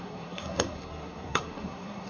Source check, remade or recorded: remade